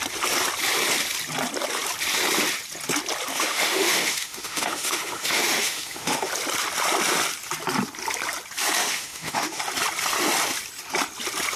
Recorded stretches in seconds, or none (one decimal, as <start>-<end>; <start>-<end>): 0.0-3.3; 6.3-8.8; 9.6-11.6

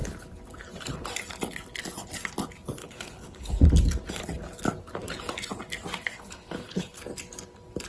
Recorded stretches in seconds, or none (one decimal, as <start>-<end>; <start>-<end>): 0.0-2.8; 3.7-6.1; 7.0-7.9

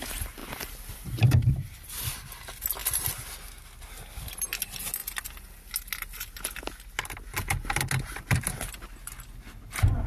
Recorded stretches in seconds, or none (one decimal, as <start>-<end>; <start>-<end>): 0.0-0.4; 2.4-10.1

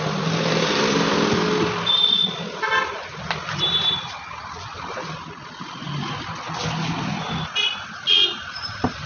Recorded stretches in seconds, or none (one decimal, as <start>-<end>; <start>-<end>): 0.0-2.2; 5.5-9.1

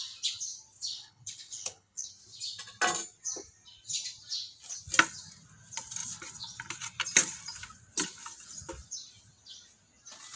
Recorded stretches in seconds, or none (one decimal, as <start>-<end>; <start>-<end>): 0.0-0.9; 2.1-10.4